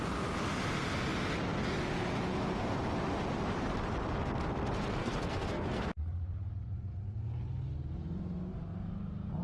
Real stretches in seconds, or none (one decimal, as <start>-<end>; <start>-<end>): 0.0-5.0; 5.9-9.4